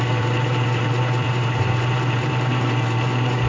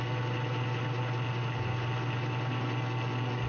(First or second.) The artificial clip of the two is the first